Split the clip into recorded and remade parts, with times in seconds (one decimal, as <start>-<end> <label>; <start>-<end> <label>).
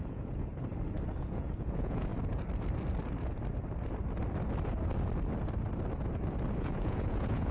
0.0-0.5 remade; 0.5-1.2 recorded; 1.2-2.1 remade; 2.1-6.6 recorded; 6.6-7.5 remade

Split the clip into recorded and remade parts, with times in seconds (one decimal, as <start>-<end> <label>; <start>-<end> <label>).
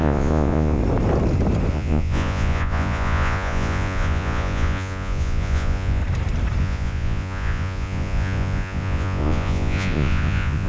0.0-0.8 remade; 0.8-1.7 recorded; 1.7-6.0 remade; 6.0-6.6 recorded; 6.6-10.7 remade